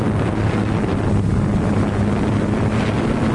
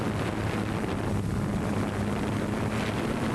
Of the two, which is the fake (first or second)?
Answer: second